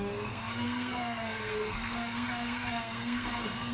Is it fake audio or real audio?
fake